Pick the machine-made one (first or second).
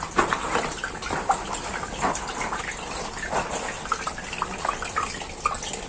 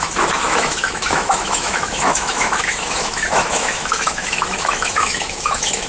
second